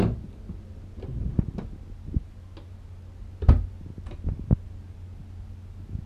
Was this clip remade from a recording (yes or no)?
no